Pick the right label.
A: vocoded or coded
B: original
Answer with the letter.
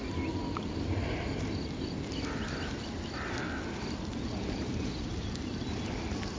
B